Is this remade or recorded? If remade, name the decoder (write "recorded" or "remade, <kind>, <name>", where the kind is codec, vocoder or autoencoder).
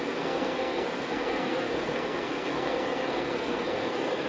remade, codec, SNAC